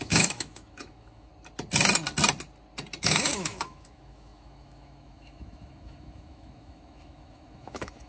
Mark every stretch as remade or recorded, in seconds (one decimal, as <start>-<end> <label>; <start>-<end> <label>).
0.0-1.3 remade; 1.3-3.0 recorded; 3.0-8.1 remade